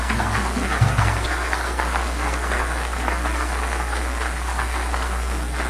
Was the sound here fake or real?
fake